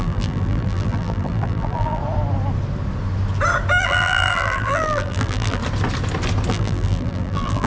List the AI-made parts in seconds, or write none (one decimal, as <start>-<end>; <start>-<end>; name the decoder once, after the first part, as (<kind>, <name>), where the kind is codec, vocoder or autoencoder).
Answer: 0.0-2.0 (vocoder, BigVGAN v2); 3.8-5.6; 6.5-7.7